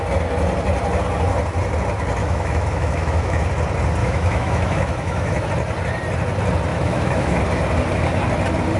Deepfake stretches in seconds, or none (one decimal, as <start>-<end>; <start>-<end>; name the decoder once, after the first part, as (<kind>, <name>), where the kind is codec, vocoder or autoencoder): 2.2-3.5 (autoencoder, DAC-VAE); 4.0-5.5; 6.7-7.4